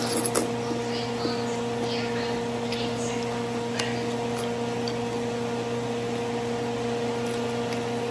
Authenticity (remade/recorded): recorded